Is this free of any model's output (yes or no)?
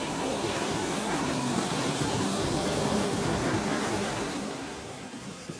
no